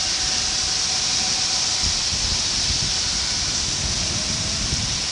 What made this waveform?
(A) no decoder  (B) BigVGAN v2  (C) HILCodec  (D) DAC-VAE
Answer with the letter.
A